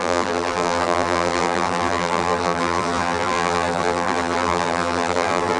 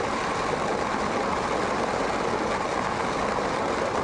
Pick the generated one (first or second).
first